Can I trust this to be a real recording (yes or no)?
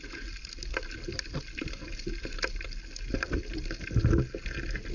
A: yes